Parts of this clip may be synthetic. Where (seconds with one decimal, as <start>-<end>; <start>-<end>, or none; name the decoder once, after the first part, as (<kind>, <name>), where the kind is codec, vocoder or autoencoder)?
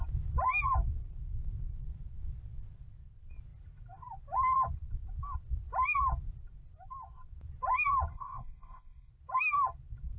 8.1-9.1 (codec, SNAC)